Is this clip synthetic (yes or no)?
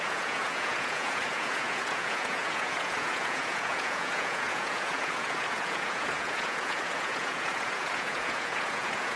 yes